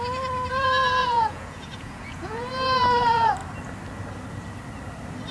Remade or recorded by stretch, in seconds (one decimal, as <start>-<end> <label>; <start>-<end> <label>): 0.0-1.0 recorded; 1.0-2.5 remade; 2.5-5.3 recorded

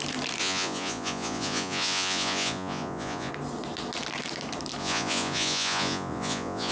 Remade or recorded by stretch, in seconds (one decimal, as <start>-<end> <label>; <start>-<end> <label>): 0.0-0.4 recorded; 0.4-3.3 remade; 3.3-4.8 recorded; 4.8-6.7 remade

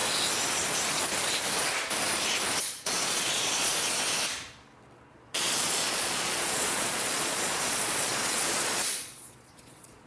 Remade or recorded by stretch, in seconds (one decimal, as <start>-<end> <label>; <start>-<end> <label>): 0.0-2.6 recorded; 2.6-3.7 remade; 3.7-5.1 recorded; 5.1-10.1 remade

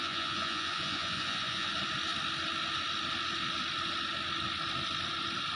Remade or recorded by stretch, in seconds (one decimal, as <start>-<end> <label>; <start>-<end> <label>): 0.0-1.7 remade; 1.7-5.6 recorded

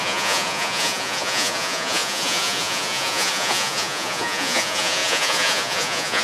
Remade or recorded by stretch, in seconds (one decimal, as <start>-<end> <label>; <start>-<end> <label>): 0.0-6.2 remade

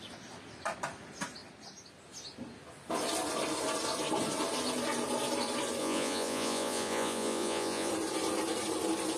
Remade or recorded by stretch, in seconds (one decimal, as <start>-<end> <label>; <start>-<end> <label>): 0.0-5.8 recorded; 5.8-7.9 remade; 7.9-9.2 recorded

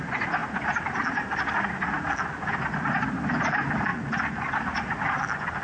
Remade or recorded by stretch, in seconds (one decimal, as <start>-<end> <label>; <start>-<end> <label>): 0.0-3.9 recorded; 3.9-4.5 remade; 4.5-5.6 recorded

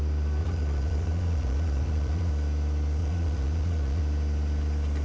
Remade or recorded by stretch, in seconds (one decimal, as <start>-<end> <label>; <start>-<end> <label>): 0.0-0.4 recorded; 0.4-2.3 remade; 2.3-3.0 recorded; 3.0-4.0 remade; 4.0-5.0 recorded